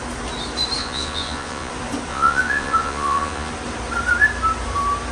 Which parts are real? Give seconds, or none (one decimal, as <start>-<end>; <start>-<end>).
0.0-0.8; 1.7-2.1; 3.5-5.1